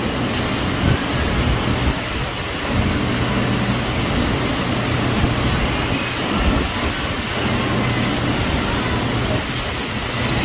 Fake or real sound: real